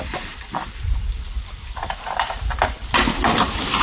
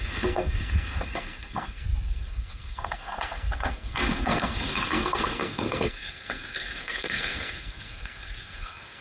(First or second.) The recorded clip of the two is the first